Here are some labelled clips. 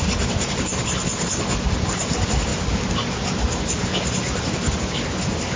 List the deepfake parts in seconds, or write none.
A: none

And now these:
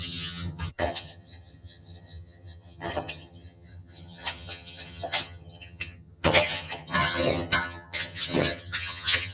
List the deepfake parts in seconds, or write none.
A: 0.0-9.3 (vocoder, HiFi-GAN)

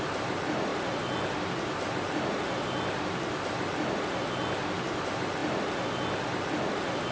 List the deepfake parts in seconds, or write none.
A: none

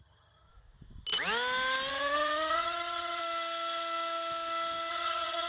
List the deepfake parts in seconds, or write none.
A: 0.0-0.5 (vocoder, HiFi-GAN); 1.9-3.2; 4.9-5.5

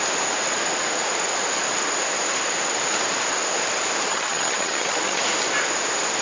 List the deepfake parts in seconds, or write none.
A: 4.1-5.2 (vocoder, HiFi-GAN)